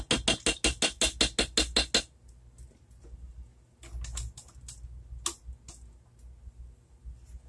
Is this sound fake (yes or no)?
no